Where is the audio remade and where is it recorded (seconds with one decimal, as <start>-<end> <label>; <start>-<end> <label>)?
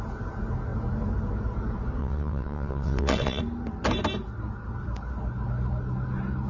0.0-2.0 recorded; 2.0-3.4 remade; 3.4-6.5 recorded